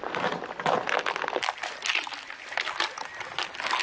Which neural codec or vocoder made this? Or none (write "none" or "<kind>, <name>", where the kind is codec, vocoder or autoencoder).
none